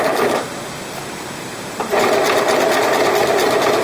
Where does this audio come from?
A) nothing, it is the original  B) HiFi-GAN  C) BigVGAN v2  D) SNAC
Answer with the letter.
C